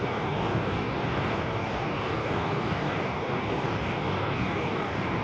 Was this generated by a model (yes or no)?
yes